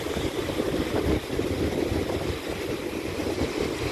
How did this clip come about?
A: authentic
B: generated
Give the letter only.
A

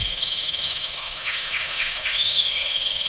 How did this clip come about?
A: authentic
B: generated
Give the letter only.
B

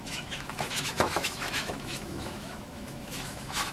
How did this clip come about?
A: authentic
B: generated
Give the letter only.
B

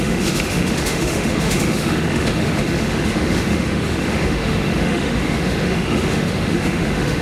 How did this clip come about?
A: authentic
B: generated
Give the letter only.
B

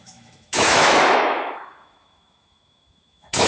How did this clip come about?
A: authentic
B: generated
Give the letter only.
B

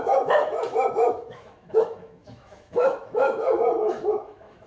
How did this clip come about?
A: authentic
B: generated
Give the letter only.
B